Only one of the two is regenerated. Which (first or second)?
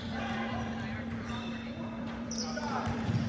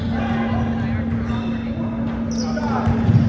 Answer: first